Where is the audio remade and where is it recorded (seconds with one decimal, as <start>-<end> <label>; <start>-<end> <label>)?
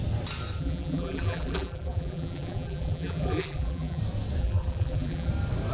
0.0-0.6 recorded; 0.6-4.0 remade; 4.0-4.4 recorded; 4.4-5.3 remade; 5.3-5.7 recorded